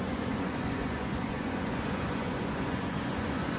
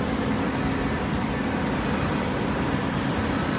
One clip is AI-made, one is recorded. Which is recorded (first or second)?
second